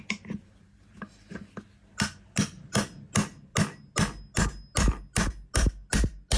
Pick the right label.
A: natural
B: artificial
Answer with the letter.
A